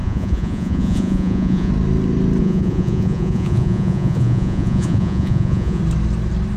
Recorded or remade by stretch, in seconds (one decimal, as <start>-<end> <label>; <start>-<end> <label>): 0.0-1.7 remade; 1.7-2.4 recorded; 2.4-5.8 remade; 5.8-6.6 recorded